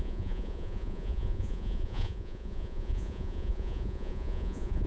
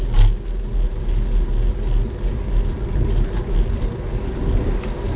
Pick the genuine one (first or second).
second